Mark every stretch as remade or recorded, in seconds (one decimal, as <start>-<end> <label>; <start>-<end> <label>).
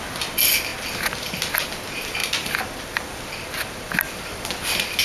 0.0-5.0 recorded